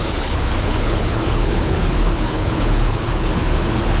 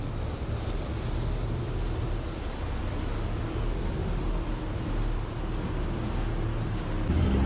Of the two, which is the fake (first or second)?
first